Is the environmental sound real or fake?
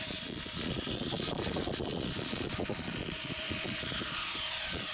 fake